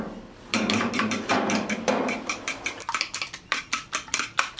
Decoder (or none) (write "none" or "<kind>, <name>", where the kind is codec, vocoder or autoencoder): vocoder, BigVGAN v2